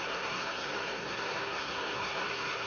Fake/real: fake